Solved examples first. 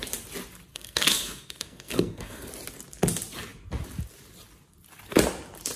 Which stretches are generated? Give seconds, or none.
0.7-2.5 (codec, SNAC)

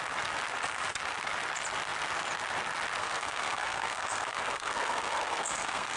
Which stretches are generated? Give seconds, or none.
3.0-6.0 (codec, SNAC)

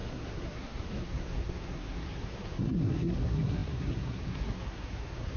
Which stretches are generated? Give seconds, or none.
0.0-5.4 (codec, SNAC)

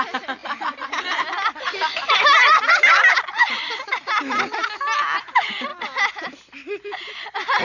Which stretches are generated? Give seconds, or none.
none